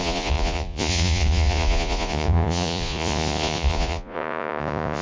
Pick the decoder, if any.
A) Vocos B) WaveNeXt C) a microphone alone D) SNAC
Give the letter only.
A